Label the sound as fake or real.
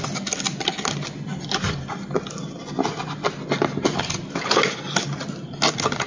real